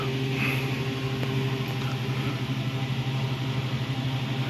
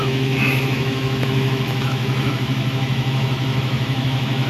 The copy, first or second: second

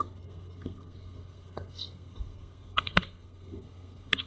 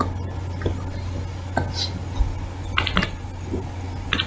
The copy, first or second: first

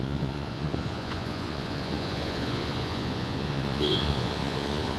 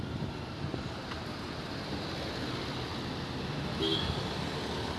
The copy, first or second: first